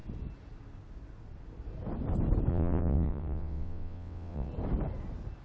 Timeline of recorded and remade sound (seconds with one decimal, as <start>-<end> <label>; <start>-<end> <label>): 0.0-2.5 recorded; 2.5-4.5 remade; 4.5-5.4 recorded